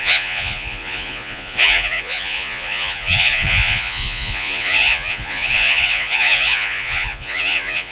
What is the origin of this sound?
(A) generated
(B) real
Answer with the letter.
A